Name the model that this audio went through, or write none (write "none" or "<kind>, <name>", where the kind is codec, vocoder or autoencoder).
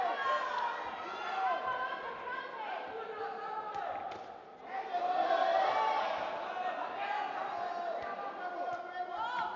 none